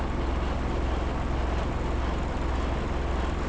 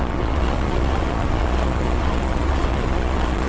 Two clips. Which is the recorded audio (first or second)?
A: first